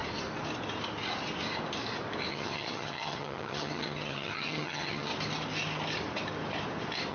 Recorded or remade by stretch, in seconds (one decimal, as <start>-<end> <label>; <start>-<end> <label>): 0.0-2.3 recorded; 2.3-5.1 remade; 5.1-7.1 recorded